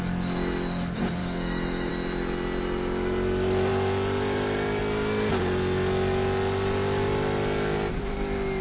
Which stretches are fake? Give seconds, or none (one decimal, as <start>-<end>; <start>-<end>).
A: 1.2-1.9